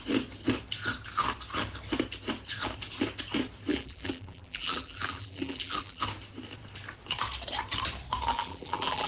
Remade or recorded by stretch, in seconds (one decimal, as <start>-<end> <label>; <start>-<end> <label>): 0.0-3.7 recorded; 3.7-6.0 remade; 6.0-8.3 recorded; 8.3-9.1 remade

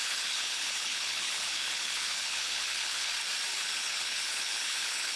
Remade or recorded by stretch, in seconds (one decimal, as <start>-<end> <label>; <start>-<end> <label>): 0.0-3.1 remade; 3.1-3.5 recorded; 3.5-5.2 remade

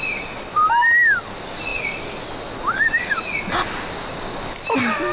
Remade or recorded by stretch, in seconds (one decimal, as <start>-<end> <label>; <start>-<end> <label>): 0.0-5.1 recorded

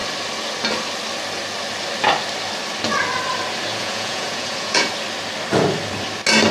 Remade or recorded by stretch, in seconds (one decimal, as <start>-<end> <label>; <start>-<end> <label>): 0.0-3.7 recorded; 3.7-4.9 remade; 4.9-6.5 recorded